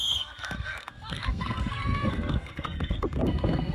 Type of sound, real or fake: fake